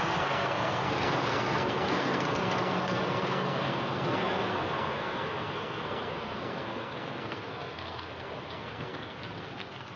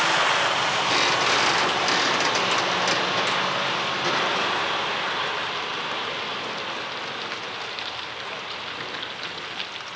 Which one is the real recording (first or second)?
second